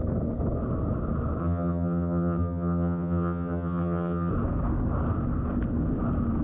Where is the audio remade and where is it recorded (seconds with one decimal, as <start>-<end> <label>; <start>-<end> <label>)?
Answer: 0.0-1.4 recorded; 1.4-4.3 remade; 4.3-6.4 recorded

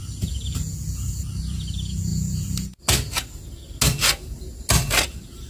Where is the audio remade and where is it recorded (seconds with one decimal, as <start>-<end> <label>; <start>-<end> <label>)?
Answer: 0.0-5.5 recorded

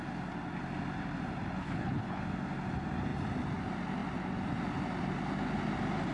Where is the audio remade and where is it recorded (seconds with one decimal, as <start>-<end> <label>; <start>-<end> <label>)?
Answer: 0.0-1.6 recorded; 1.6-2.2 remade; 2.2-6.1 recorded

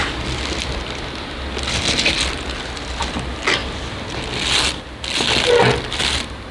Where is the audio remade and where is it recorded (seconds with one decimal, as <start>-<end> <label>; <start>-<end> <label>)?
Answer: 0.0-6.5 recorded

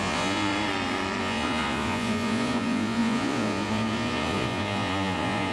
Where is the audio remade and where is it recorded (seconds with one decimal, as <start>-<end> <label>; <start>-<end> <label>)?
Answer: 0.0-0.5 remade; 0.5-1.2 recorded; 1.2-5.5 remade